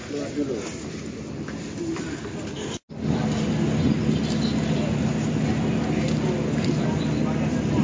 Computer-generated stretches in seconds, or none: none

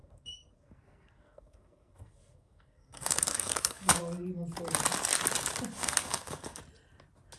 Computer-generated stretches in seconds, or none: 0.0-4.0 (codec, SNAC); 5.8-6.6

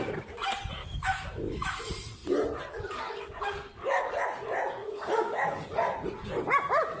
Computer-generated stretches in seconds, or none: 0.8-1.8 (autoencoder, DAC-VAE); 4.8-5.6